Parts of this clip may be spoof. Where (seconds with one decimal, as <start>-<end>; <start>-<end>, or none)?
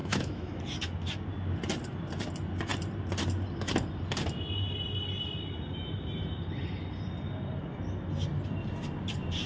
0.0-0.6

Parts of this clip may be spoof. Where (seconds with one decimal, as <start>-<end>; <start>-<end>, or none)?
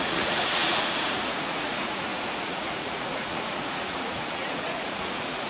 0.0-5.5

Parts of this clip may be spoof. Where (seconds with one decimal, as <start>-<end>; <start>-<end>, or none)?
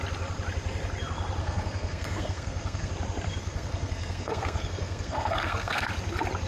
1.4-2.9; 3.4-5.9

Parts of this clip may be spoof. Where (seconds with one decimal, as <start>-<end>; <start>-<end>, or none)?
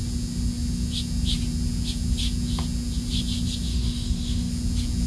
3.7-4.5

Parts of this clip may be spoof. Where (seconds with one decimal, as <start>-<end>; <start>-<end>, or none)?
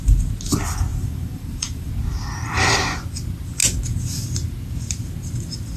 0.9-1.9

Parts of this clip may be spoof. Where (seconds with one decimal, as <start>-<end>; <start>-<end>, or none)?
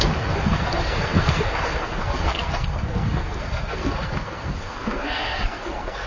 0.0-6.1